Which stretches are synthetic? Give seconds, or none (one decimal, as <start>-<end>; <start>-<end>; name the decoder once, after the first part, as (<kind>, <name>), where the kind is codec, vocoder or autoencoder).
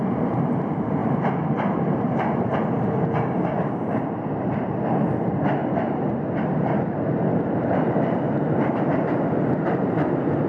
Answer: 0.0-2.5 (vocoder, BigVGAN v2); 4.7-5.6; 7.4-10.5